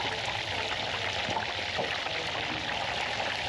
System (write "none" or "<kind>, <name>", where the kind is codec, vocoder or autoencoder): vocoder, BigVGAN v2